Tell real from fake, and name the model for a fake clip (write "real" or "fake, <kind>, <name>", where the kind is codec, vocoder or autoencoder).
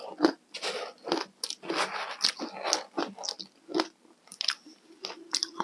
real